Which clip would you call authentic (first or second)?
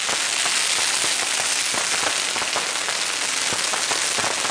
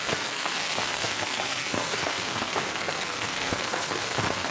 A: first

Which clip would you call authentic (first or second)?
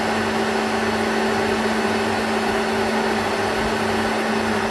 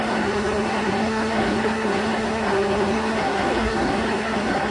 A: first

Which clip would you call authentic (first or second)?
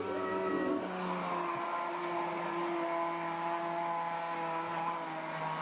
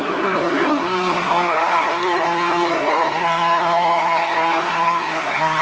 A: first